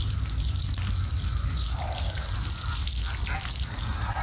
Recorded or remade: recorded